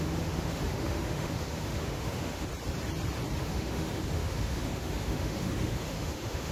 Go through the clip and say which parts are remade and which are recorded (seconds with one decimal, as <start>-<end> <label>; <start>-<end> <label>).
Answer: 0.0-2.5 remade; 2.5-3.4 recorded; 3.4-6.5 remade

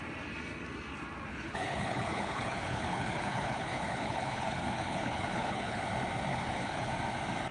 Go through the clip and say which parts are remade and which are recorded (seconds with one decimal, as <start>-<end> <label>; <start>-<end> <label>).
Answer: 0.0-1.3 recorded; 1.3-5.8 remade; 5.8-6.3 recorded; 6.3-6.9 remade; 6.9-7.5 recorded

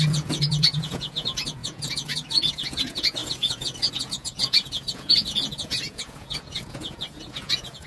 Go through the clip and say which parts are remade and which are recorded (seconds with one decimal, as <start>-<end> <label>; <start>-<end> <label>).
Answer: 0.0-7.9 remade

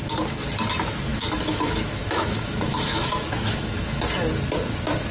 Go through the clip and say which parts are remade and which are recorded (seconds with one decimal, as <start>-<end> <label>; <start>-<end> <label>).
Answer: 0.0-1.1 recorded; 1.1-4.0 remade; 4.0-5.1 recorded

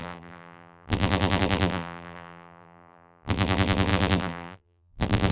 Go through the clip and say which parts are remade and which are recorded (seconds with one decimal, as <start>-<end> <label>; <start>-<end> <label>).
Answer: 0.0-5.3 remade

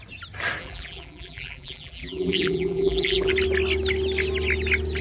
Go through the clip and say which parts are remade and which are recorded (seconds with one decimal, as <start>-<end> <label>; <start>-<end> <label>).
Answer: 0.0-0.6 recorded; 0.6-3.3 remade; 3.3-5.0 recorded

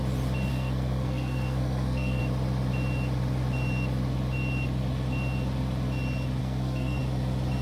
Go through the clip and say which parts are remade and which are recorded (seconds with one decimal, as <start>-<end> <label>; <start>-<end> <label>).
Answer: 0.0-0.5 recorded; 0.5-2.2 remade; 2.2-6.4 recorded; 6.4-7.0 remade; 7.0-7.6 recorded

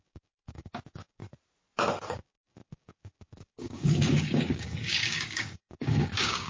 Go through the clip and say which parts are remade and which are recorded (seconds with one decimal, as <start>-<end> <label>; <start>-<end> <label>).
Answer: 0.0-1.2 remade; 1.2-2.1 recorded; 2.1-6.5 remade